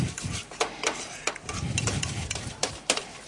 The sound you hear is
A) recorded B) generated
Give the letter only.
B